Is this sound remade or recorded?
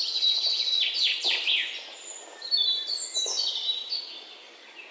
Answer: recorded